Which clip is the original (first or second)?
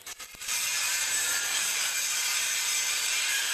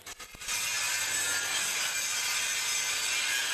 second